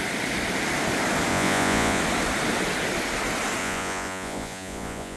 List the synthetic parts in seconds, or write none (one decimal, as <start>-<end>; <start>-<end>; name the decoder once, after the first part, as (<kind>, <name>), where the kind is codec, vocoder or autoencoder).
1.3-2.0 (vocoder, Vocos); 3.6-5.2